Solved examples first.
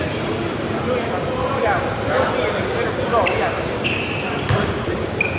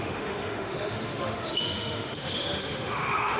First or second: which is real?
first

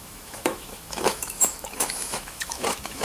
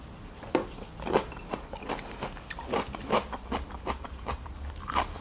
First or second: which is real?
second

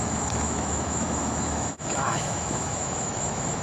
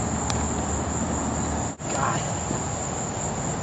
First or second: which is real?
second